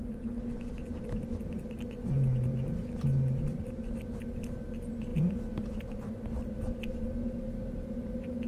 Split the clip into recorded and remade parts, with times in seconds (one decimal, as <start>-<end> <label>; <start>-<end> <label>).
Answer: 0.0-8.5 recorded